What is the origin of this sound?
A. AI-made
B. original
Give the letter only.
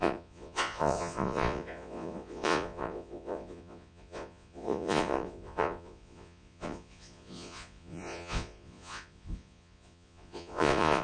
A